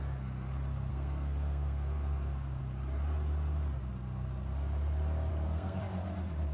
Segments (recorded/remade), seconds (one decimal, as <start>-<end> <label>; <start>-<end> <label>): 0.0-0.9 recorded; 0.9-2.6 remade; 2.6-5.3 recorded; 5.3-5.8 remade; 5.8-6.5 recorded

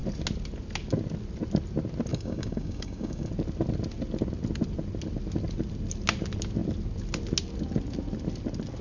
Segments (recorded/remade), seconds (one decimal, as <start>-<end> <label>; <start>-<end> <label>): 0.0-2.1 recorded; 2.1-3.3 remade; 3.3-8.8 recorded

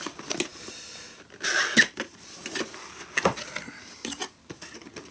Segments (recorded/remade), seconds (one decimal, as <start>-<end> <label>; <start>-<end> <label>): 0.0-5.1 recorded

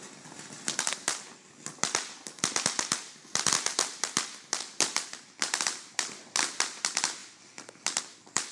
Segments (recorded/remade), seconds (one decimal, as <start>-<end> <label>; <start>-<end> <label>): 0.0-8.5 recorded

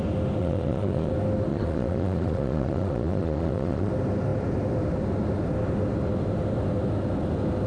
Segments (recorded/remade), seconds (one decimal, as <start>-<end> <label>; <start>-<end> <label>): 0.0-0.4 recorded; 0.4-1.1 remade; 1.1-1.5 recorded; 1.5-3.9 remade; 3.9-7.7 recorded

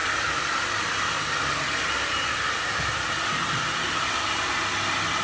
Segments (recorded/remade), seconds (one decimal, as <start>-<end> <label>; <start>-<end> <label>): 0.0-3.1 remade; 3.1-5.2 recorded

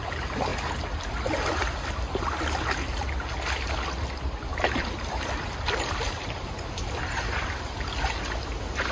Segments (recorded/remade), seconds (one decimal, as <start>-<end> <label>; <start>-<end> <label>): 0.0-4.5 recorded; 4.5-6.7 remade; 6.7-8.9 recorded